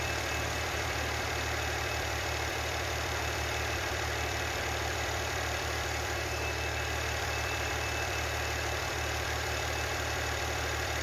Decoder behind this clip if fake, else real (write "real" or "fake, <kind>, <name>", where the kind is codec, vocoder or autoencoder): fake, vocoder, BigVGAN v2